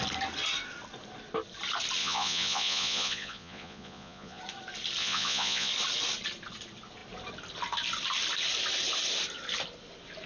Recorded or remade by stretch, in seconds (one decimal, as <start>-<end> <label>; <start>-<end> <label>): 0.0-2.0 recorded; 2.0-4.4 remade; 4.4-5.0 recorded; 5.0-5.7 remade; 5.7-10.3 recorded